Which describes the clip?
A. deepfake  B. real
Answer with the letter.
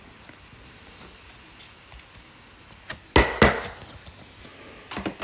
B